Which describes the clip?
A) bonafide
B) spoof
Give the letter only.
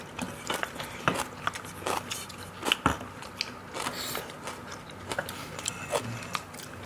A